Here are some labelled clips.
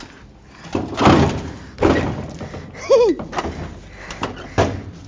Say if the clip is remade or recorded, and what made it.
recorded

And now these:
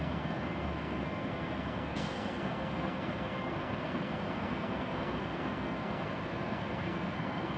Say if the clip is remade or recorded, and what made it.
remade, codec, SNAC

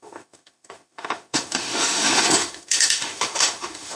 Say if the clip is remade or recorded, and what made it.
remade, autoencoder, DAC-VAE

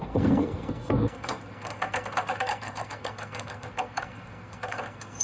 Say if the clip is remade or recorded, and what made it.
remade, codec, SNAC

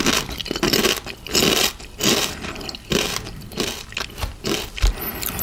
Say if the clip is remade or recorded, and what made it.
recorded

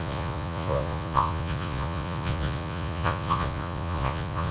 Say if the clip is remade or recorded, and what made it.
remade, vocoder, Vocos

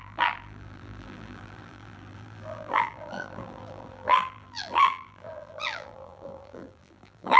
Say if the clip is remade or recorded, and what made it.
remade, vocoder, BigVGAN v2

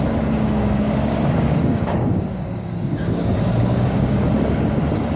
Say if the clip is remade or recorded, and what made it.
remade, codec, DAC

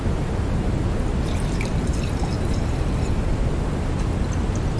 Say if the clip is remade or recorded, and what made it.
recorded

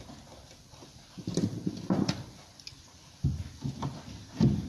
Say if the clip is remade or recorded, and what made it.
recorded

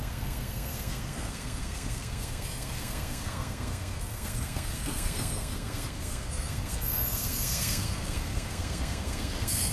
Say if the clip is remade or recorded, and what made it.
remade, codec, SNAC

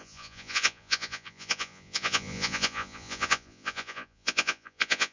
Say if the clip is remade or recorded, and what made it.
remade, vocoder, Vocos